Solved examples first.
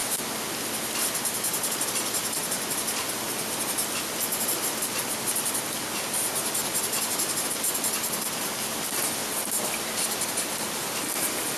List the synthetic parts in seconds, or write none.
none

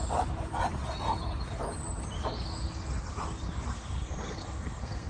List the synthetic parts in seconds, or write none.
3.7-5.1 (codec, SNAC)